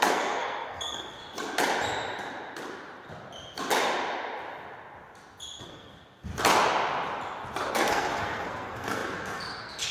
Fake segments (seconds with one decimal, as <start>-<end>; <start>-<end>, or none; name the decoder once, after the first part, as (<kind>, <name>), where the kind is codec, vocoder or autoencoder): 0.0-1.2 (codec, SNAC); 5.6-6.3; 7.7-9.9